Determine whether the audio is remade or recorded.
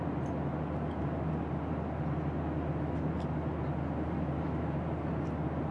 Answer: recorded